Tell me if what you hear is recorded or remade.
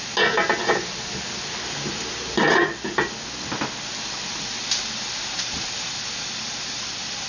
recorded